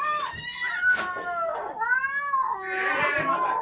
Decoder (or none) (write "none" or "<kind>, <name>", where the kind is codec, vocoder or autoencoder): none